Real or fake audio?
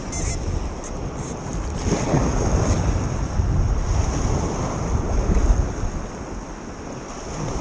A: real